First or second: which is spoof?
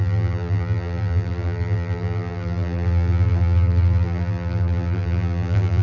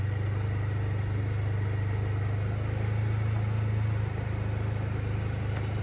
first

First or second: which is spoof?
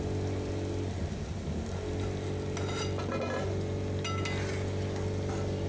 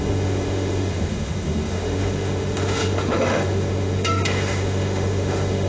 second